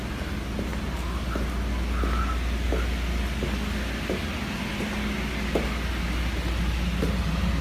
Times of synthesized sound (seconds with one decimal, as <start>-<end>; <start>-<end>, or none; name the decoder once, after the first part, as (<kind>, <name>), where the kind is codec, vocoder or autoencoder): none